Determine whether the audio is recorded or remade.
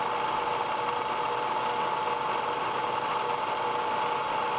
recorded